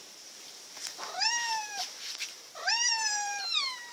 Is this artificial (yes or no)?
yes